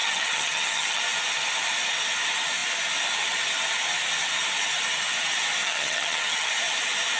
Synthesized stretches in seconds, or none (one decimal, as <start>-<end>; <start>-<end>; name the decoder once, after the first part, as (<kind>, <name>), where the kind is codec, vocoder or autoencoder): 0.0-1.0 (vocoder, HiFi-GAN); 5.6-6.5